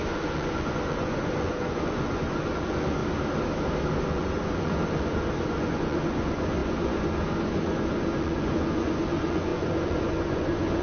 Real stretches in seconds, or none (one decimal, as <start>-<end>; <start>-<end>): 3.0-4.1